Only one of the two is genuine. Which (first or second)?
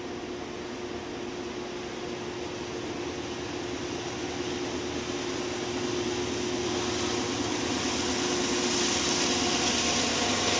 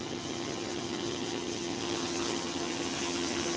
first